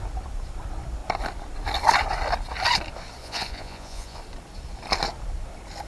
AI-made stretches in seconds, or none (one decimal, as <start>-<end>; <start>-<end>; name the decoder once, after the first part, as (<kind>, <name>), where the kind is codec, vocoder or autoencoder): 3.2-4.2 (vocoder, Vocos)